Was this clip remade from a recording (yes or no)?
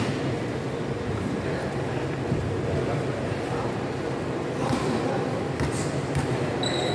yes